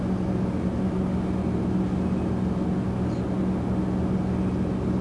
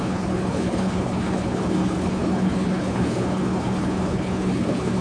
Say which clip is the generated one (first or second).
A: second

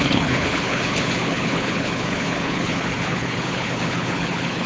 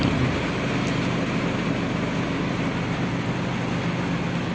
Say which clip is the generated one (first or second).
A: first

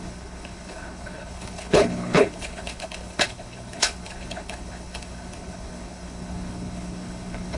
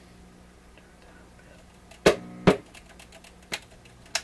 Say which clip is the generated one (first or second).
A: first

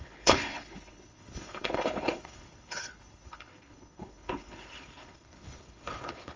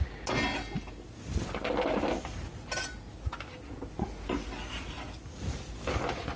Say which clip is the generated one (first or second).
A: first